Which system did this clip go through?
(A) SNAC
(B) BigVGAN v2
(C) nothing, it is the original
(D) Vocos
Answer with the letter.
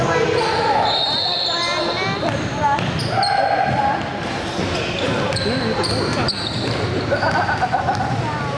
C